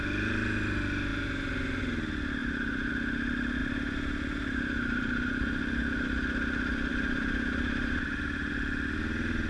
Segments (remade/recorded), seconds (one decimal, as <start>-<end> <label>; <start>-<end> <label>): 0.0-1.1 recorded; 1.1-1.8 remade; 1.8-2.4 recorded; 2.4-2.9 remade; 2.9-3.6 recorded; 3.6-5.6 remade; 5.6-6.9 recorded; 6.9-8.5 remade; 8.5-9.5 recorded